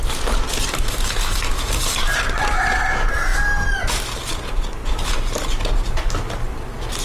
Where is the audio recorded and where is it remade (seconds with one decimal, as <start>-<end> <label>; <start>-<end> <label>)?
0.0-2.1 recorded; 2.1-2.8 remade; 2.8-4.8 recorded; 4.8-5.6 remade; 5.6-7.0 recorded